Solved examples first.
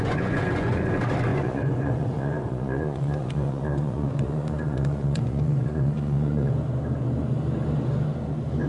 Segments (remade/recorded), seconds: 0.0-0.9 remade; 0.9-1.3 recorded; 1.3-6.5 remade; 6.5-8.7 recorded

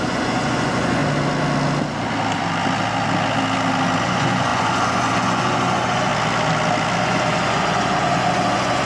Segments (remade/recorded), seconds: 0.0-1.0 remade; 1.0-4.0 recorded; 4.0-6.1 remade; 6.1-7.0 recorded; 7.0-8.9 remade

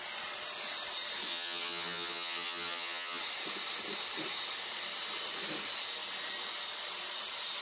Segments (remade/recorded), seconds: 0.0-1.3 recorded; 1.3-3.2 remade; 3.2-7.6 recorded

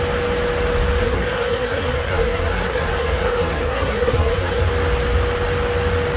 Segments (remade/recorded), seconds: 0.0-1.0 recorded; 1.0-4.7 remade; 4.7-6.2 recorded